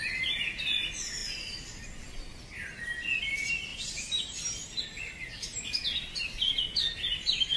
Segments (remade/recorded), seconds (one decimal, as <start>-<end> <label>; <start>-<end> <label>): 0.0-7.6 recorded